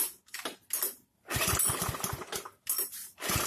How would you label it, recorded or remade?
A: recorded